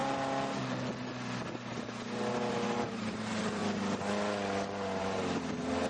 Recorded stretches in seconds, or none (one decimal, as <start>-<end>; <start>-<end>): 0.0-2.5; 3.6-5.0